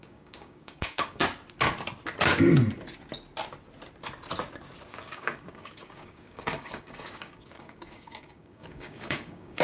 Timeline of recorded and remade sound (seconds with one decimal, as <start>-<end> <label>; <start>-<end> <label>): 0.0-1.2 remade; 1.2-4.9 recorded; 4.9-9.6 remade